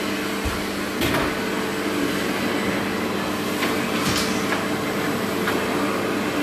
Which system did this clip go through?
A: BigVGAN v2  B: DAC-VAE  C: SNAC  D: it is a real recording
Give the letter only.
D